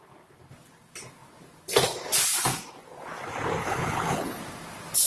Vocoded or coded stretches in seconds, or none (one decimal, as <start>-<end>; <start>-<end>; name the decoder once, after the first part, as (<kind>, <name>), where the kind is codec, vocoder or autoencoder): 3.6-4.4 (codec, HILCodec)

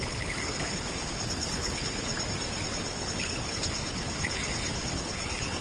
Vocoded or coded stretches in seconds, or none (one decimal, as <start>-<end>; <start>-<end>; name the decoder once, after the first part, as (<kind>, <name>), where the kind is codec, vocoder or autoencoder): 0.0-2.1 (codec, HILCodec); 2.7-5.6

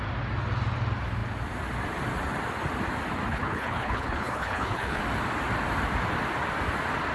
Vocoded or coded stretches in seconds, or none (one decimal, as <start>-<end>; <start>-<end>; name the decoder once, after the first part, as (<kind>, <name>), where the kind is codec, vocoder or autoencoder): 3.3-5.0 (codec, HILCodec)

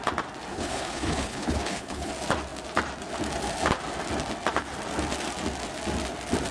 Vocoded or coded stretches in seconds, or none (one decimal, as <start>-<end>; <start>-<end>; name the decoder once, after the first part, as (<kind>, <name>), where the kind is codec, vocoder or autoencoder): 0.5-2.1 (codec, HILCodec)

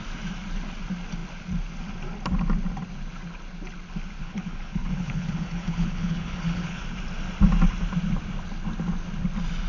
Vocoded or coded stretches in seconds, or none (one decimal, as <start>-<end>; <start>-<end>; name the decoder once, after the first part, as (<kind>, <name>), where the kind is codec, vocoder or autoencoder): 4.2-6.8 (codec, HILCodec)

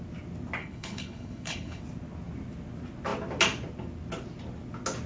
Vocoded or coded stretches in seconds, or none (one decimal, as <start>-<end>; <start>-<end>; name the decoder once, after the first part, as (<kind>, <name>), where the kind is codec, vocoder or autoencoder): 0.6-1.8 (codec, HILCodec)

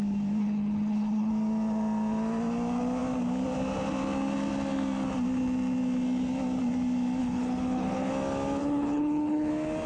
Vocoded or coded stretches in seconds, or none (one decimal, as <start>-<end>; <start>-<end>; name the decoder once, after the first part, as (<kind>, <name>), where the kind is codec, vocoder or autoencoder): 0.4-1.3 (codec, HILCodec); 7.2-8.1; 8.6-9.5